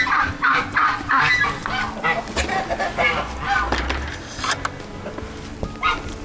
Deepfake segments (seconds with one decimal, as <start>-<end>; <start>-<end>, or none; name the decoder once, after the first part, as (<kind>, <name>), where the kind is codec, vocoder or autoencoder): none